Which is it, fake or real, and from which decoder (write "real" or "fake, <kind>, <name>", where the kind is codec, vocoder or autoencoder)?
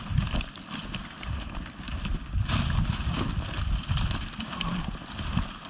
real